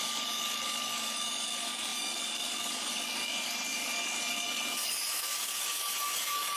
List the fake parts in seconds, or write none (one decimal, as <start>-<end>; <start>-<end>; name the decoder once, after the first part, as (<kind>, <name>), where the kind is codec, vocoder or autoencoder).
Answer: 0.0-6.6 (codec, DAC)